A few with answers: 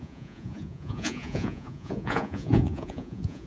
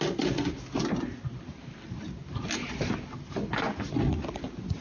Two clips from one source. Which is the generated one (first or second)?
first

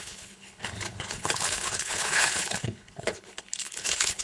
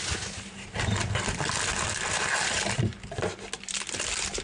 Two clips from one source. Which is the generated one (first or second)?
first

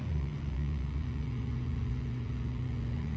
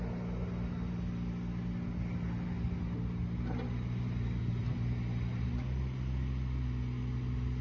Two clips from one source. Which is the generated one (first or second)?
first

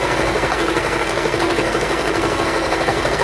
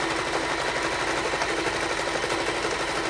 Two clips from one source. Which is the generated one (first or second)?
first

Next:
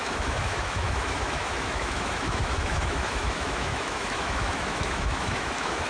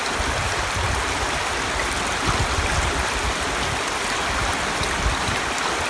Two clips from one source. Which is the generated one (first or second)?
first